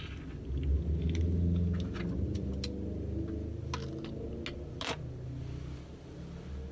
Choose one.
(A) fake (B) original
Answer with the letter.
B